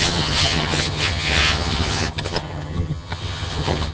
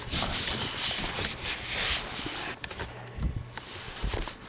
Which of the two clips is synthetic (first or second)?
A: first